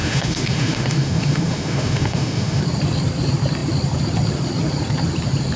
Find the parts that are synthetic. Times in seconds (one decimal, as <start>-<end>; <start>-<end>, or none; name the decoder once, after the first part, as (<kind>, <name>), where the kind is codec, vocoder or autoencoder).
0.0-2.6 (autoencoder, DAC-VAE)